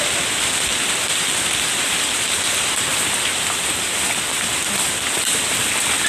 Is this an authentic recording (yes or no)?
yes